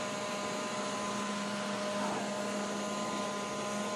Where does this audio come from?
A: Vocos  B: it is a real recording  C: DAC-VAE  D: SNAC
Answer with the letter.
B